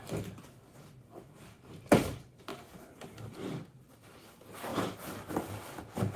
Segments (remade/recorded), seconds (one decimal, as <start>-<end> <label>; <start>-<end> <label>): 0.0-6.2 recorded